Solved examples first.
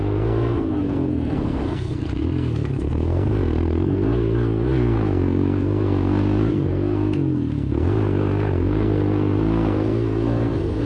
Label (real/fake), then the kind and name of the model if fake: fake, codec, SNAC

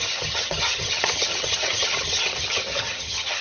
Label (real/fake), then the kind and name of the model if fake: fake, vocoder, HiFi-GAN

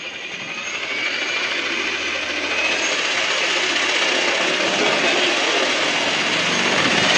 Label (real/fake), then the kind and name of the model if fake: real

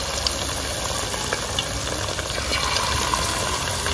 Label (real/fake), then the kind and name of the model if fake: real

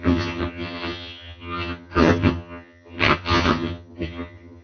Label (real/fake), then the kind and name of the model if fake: fake, vocoder, HiFi-GAN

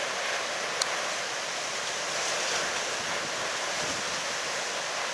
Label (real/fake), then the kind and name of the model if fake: real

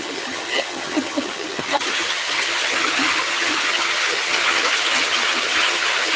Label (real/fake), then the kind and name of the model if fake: fake, vocoder, HiFi-GAN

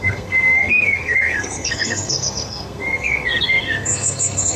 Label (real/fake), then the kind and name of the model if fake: fake, codec, SNAC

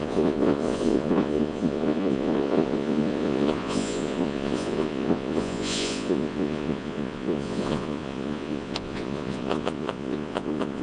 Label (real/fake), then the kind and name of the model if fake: fake, vocoder, Vocos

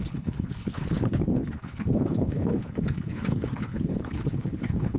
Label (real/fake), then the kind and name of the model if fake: fake, codec, HILCodec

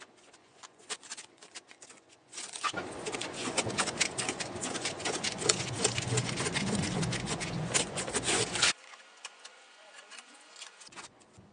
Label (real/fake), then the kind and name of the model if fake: fake, vocoder, Vocos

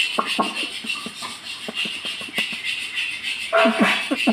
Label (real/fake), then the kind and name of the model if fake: real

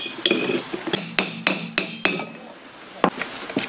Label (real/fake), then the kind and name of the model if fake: real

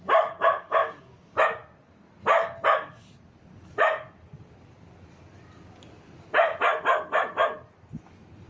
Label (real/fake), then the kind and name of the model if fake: real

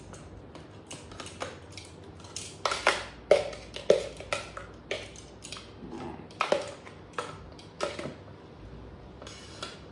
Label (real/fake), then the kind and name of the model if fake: real